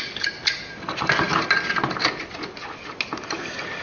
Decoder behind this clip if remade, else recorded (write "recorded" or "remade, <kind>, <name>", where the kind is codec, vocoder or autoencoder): recorded